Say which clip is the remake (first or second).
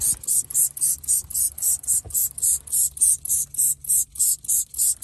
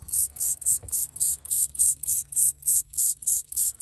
second